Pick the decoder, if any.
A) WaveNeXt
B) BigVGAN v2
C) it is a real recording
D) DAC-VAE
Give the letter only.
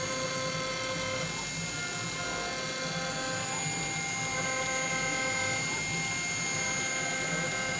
C